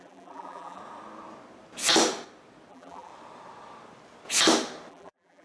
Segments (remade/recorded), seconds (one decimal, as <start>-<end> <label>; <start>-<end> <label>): 0.0-0.8 remade; 0.8-2.7 recorded; 2.7-3.1 remade; 3.1-4.9 recorded; 4.9-5.4 remade

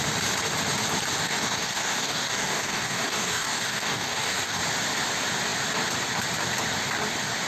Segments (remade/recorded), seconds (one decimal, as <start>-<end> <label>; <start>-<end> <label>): 0.0-1.2 recorded; 1.2-4.6 remade; 4.6-7.5 recorded